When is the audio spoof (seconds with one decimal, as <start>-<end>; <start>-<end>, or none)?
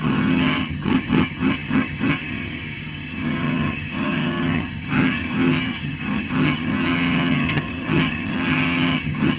0.0-9.4